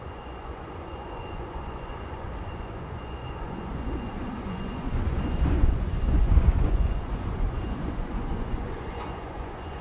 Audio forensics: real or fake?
fake